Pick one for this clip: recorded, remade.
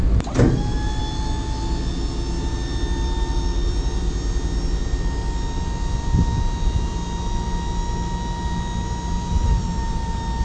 recorded